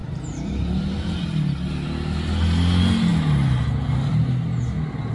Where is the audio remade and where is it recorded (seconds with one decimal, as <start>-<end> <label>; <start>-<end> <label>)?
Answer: 0.0-1.0 remade; 1.0-5.1 recorded